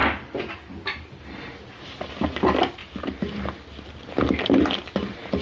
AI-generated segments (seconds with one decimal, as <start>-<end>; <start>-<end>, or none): none